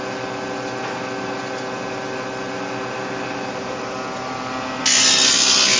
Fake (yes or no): no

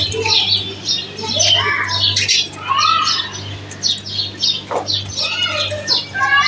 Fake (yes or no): no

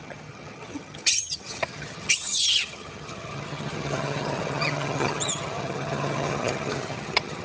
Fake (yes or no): yes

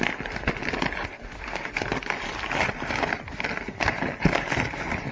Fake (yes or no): no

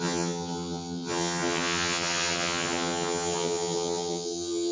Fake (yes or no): yes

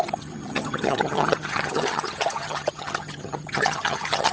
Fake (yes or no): yes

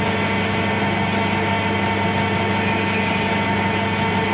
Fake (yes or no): no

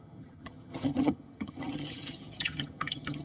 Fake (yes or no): yes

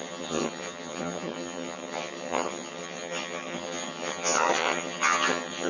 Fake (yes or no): yes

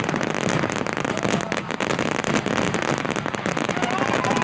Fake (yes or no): no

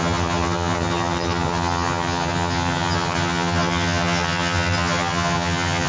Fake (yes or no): yes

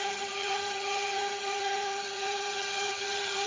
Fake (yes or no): yes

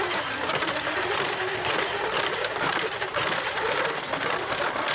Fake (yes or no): no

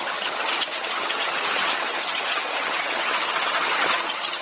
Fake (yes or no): yes